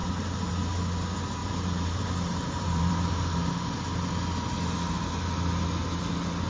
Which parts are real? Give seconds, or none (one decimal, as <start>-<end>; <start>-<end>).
0.5-1.4; 3.5-6.5